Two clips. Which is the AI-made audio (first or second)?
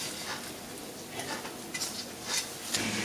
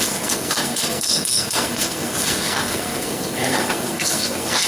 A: second